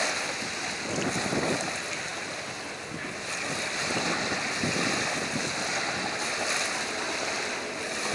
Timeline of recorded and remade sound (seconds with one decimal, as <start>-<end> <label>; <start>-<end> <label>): 0.0-8.1 recorded